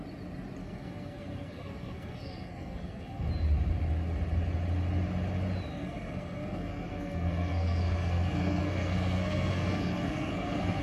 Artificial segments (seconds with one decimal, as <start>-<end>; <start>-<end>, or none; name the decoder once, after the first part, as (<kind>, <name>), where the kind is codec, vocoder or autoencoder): 0.6-3.3 (codec, SNAC); 5.7-10.8

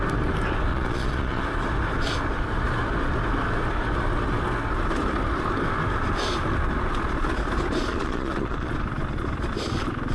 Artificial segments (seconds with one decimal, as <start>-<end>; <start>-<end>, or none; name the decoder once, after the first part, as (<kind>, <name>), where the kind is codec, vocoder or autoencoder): 0.7-1.4 (vocoder, Vocos); 7.9-8.7

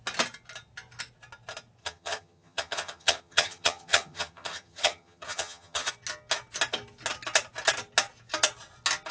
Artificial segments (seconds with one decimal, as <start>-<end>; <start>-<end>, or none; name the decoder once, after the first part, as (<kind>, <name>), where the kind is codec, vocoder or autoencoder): 1.8-5.9 (vocoder, HiFi-GAN)